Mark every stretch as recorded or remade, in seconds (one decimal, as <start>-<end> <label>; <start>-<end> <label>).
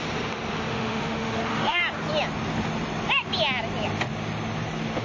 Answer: 0.0-0.7 recorded; 0.7-1.8 remade; 1.8-5.0 recorded